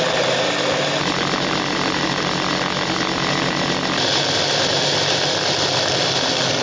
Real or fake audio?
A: real